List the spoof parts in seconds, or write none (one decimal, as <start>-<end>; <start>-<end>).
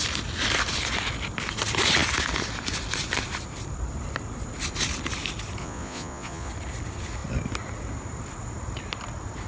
5.6-6.5